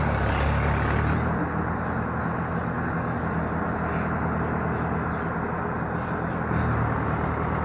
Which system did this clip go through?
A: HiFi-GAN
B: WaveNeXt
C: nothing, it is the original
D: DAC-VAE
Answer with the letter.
C